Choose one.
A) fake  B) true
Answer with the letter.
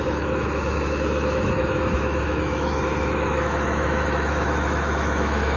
A